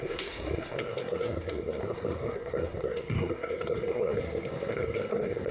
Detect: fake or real fake